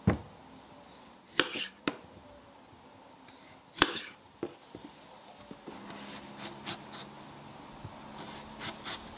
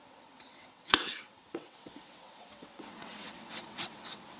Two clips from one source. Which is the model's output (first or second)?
second